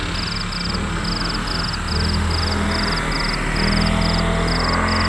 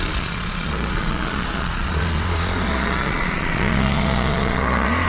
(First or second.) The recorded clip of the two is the first